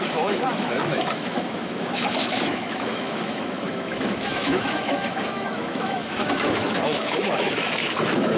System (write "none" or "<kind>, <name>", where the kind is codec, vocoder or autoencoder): autoencoder, DAC-VAE